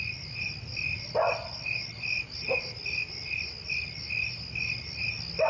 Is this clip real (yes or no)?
yes